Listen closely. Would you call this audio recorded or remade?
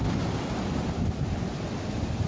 recorded